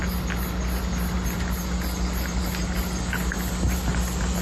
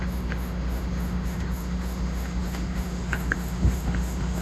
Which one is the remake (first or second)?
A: second